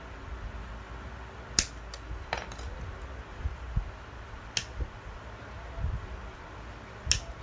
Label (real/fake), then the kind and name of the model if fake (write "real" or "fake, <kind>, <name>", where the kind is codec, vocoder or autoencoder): real